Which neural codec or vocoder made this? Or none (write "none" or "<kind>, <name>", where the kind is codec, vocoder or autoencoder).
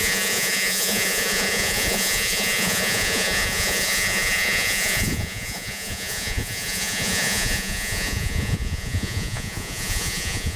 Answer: vocoder, Vocos